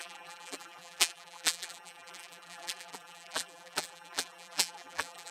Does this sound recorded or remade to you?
remade